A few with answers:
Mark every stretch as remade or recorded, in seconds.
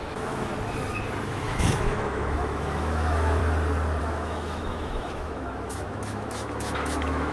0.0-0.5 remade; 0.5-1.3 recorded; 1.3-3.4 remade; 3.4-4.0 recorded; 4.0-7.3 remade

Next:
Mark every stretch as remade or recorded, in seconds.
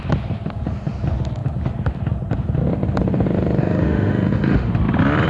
0.0-3.6 recorded; 3.6-4.7 remade; 4.7-5.3 recorded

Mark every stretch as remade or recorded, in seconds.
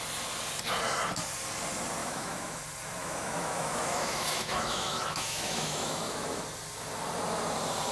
0.0-2.0 recorded; 2.0-2.6 remade; 2.6-3.0 recorded; 3.0-6.4 remade; 6.4-7.9 recorded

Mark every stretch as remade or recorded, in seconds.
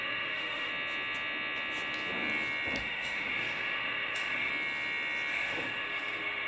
0.0-0.7 remade; 0.7-2.8 recorded; 2.8-4.5 remade; 4.5-5.3 recorded; 5.3-6.5 remade